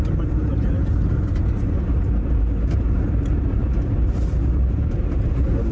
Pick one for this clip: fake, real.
fake